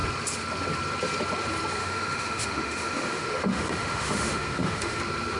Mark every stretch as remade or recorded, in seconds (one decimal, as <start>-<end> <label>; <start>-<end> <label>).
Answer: 0.0-1.8 recorded; 1.8-5.0 remade; 5.0-5.4 recorded